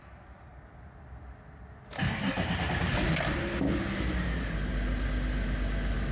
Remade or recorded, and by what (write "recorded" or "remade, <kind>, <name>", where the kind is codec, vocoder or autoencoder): recorded